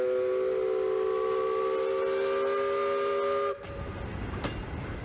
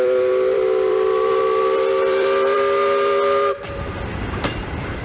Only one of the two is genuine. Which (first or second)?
first